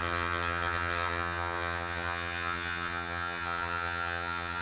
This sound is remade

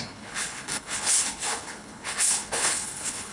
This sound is remade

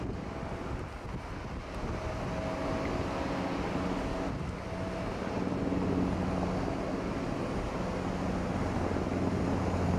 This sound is recorded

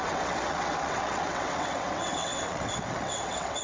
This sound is remade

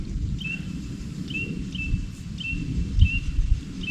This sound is remade